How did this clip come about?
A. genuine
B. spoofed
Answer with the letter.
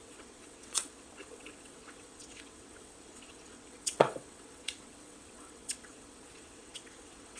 B